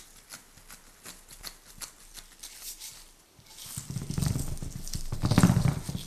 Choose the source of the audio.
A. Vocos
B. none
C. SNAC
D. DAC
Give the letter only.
B